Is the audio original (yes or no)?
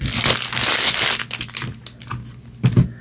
yes